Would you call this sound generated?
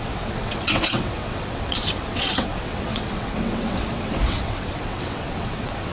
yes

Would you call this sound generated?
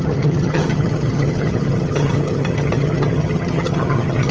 yes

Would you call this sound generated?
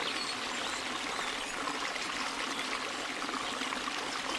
no